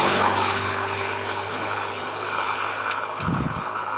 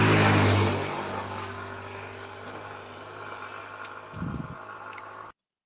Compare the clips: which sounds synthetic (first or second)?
first